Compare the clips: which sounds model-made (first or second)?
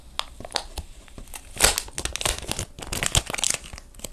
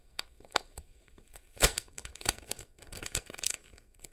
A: second